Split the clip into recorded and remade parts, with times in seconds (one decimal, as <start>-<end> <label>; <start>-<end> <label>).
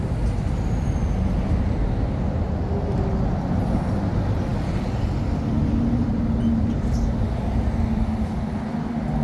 0.0-9.2 recorded